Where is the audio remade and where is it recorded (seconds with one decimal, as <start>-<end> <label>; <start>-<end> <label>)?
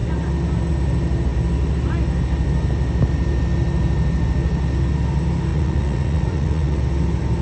0.0-5.5 recorded; 5.5-6.8 remade; 6.8-7.4 recorded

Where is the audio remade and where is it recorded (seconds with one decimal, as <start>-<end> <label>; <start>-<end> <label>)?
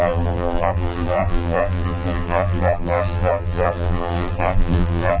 0.0-5.2 remade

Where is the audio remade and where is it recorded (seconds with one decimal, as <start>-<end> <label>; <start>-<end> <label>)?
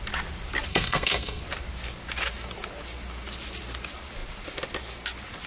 0.0-0.7 recorded; 0.7-1.4 remade; 1.4-5.5 recorded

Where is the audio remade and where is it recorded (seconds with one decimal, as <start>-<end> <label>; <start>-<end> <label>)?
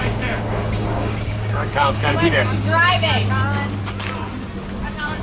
0.0-3.1 remade; 3.1-5.2 recorded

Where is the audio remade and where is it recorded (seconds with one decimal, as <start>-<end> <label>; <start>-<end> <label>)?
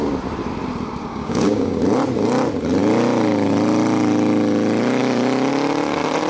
0.0-1.1 recorded; 1.1-1.8 remade; 1.8-6.3 recorded